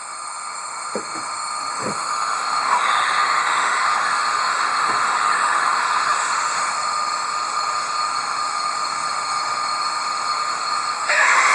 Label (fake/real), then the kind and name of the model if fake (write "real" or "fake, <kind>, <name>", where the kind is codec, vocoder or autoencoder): fake, autoencoder, DAC-VAE